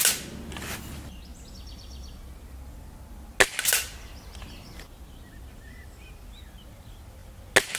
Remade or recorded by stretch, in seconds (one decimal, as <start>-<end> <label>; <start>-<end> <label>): 0.0-7.8 recorded